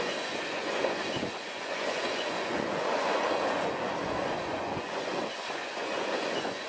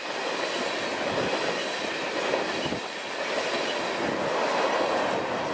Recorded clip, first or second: second